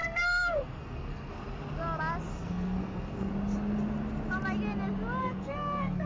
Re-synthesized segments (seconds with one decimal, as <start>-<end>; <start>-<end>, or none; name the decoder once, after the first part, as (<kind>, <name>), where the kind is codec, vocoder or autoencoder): 0.0-1.3 (codec, SNAC); 2.3-3.3; 5.2-6.1